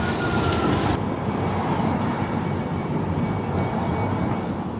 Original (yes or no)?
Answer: yes